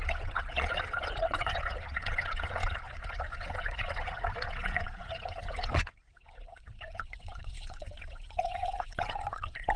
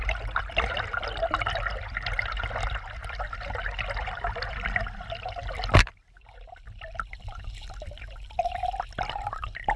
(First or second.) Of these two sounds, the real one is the second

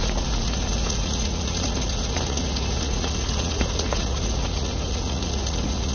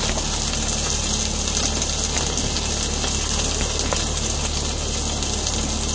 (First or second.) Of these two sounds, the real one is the second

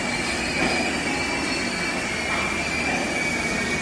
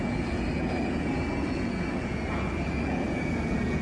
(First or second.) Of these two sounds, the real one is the first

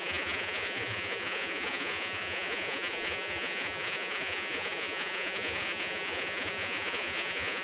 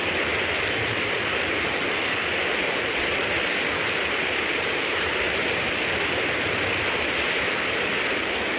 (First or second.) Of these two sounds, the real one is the second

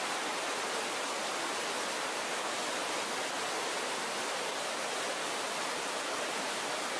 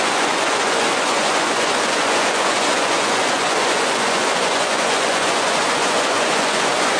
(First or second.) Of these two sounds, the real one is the first